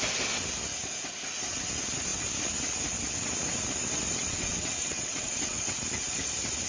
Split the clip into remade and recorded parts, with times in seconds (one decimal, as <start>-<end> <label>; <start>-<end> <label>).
0.0-4.1 recorded; 4.1-5.8 remade; 5.8-6.7 recorded